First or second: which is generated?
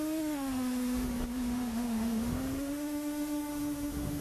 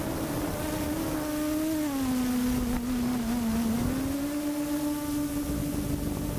first